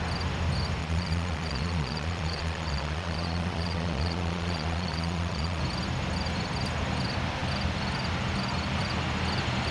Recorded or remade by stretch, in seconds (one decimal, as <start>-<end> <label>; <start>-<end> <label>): 0.0-0.8 recorded; 0.8-5.6 remade; 5.6-9.7 recorded